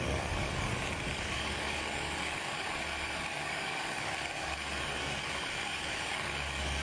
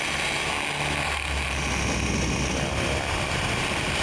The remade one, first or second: first